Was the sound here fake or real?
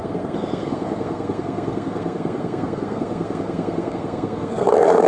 fake